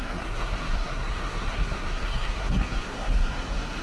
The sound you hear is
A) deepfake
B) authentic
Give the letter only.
A